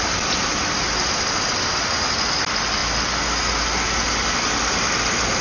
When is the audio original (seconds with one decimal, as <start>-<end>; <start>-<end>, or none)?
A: 0.0-5.4